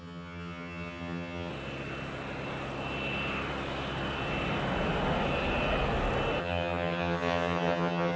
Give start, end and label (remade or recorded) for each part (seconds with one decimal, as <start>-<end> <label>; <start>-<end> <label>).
0.0-1.5 remade; 1.5-6.4 recorded; 6.4-8.2 remade